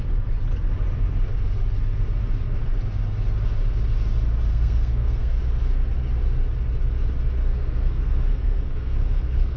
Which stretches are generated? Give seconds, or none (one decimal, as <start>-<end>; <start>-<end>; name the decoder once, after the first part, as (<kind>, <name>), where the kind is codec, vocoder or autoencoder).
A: 4.5-5.4 (codec, SNAC); 7.5-9.6